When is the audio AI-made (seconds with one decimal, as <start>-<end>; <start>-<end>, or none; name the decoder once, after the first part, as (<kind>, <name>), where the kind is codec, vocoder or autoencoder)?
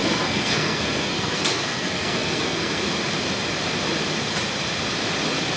0.0-2.8 (codec, SNAC)